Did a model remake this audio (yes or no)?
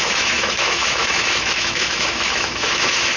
yes